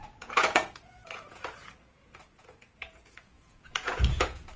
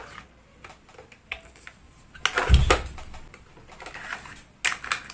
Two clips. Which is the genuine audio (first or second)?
second